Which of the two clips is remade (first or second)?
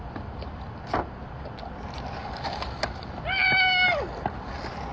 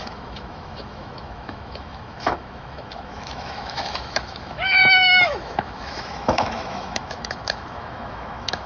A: second